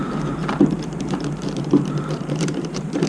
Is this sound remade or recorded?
remade